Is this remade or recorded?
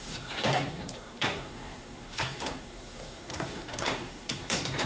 remade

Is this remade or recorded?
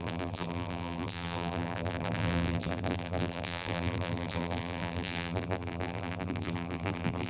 remade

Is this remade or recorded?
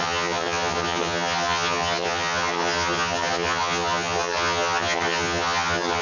remade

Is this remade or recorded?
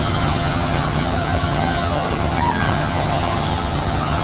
remade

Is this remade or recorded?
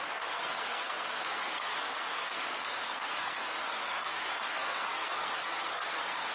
remade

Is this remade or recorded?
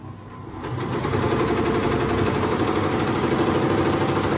recorded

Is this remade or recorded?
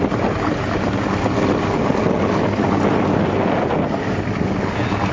recorded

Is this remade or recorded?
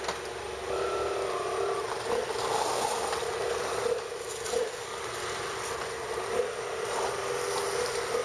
recorded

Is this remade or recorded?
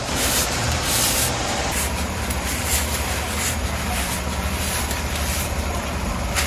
remade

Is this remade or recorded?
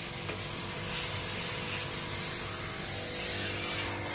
recorded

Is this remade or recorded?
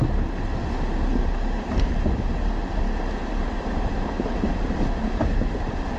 recorded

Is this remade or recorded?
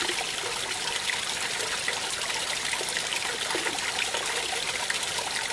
recorded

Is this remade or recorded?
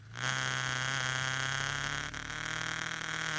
recorded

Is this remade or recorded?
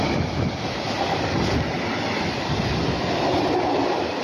recorded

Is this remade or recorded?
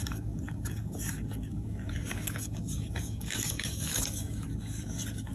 remade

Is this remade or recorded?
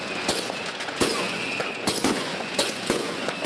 remade